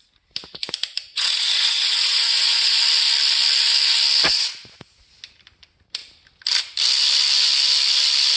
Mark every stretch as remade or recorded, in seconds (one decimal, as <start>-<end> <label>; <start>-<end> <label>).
0.0-1.1 recorded; 1.1-2.8 remade; 2.8-4.3 recorded; 4.3-5.2 remade; 5.2-8.4 recorded